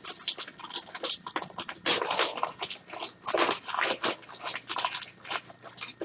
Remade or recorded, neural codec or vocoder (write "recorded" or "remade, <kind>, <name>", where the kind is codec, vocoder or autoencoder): recorded